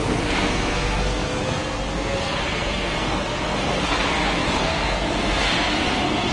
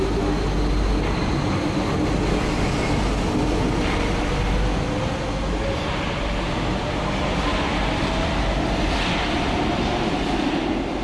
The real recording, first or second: second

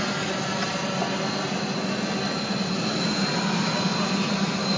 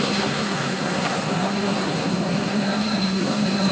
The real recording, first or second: first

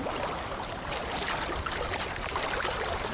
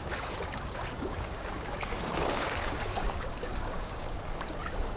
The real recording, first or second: first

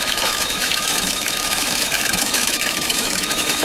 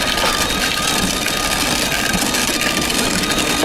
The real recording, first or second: second